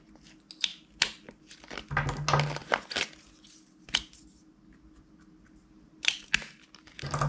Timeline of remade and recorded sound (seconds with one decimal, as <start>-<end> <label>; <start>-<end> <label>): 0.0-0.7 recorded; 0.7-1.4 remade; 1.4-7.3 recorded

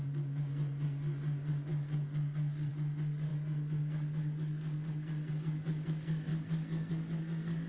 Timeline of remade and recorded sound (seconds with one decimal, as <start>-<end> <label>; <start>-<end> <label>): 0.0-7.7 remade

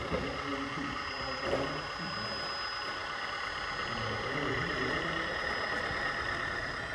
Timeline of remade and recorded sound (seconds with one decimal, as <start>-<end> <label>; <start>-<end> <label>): 0.0-6.9 recorded